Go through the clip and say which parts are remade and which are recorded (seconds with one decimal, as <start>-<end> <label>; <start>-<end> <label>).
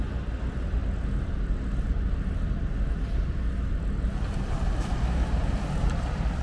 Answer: 0.0-5.4 recorded; 5.4-6.4 remade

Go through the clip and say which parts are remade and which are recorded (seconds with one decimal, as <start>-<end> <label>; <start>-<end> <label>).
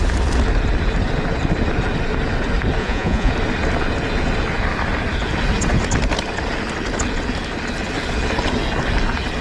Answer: 0.0-2.8 recorded; 2.8-3.3 remade; 3.3-9.4 recorded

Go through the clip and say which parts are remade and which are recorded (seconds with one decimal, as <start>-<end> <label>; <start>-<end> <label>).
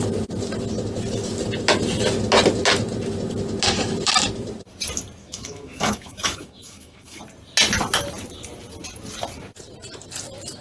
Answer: 0.0-5.2 recorded; 5.2-7.2 remade; 7.2-10.6 recorded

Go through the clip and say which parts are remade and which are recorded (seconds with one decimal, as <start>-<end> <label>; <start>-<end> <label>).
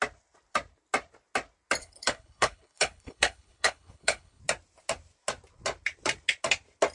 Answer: 0.0-1.8 recorded; 1.8-4.4 remade; 4.4-6.9 recorded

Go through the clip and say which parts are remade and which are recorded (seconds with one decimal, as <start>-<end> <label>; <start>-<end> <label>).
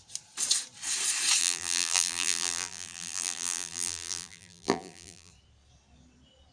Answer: 0.0-1.4 recorded; 1.4-5.3 remade; 5.3-6.5 recorded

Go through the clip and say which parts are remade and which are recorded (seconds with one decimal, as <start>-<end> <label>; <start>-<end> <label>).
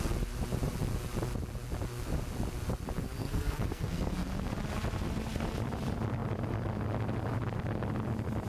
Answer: 0.0-3.2 recorded; 3.2-4.5 remade; 4.5-8.5 recorded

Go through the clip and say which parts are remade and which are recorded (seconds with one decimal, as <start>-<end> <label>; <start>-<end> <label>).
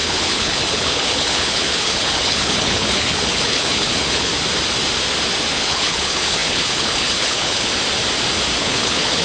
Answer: 0.0-4.3 remade; 4.3-5.5 recorded; 5.5-7.7 remade; 7.7-8.6 recorded; 8.6-9.2 remade